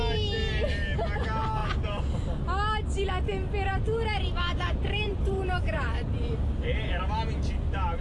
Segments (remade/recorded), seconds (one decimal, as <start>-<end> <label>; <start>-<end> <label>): 0.0-1.6 recorded; 1.6-2.1 remade; 2.1-3.7 recorded; 3.7-7.0 remade; 7.0-8.0 recorded